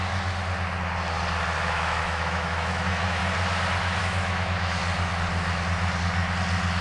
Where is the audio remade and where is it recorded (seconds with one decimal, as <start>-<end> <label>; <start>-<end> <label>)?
0.0-1.6 recorded; 1.6-3.2 remade; 3.2-4.0 recorded; 4.0-4.8 remade; 4.8-6.8 recorded